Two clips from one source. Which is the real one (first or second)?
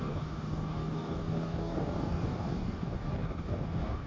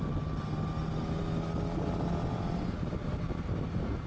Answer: second